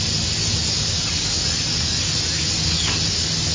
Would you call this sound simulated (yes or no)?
no